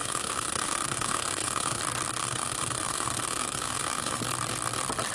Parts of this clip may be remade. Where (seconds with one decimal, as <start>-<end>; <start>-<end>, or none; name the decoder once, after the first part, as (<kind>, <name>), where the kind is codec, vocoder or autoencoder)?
0.0-1.8 (autoencoder, DAC-VAE); 2.2-4.2